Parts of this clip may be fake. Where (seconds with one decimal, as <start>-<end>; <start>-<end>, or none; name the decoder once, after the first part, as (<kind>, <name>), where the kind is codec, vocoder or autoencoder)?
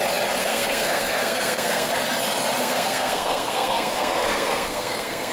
0.4-1.9 (codec, SNAC); 2.6-5.3